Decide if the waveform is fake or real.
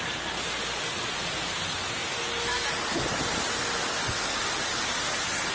real